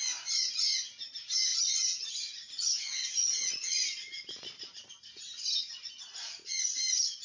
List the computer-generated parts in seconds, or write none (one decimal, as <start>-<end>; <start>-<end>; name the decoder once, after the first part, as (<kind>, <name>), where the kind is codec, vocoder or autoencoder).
1.5-4.9 (vocoder, Vocos)